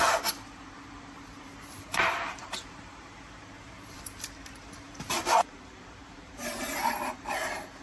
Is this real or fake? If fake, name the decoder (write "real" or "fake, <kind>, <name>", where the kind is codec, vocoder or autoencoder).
fake, vocoder, BigVGAN v2